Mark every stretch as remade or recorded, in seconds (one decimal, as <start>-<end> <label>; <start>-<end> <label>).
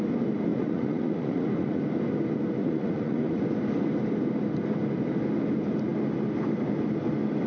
0.0-0.5 recorded; 0.5-1.8 remade; 1.8-2.6 recorded; 2.6-3.4 remade; 3.4-7.5 recorded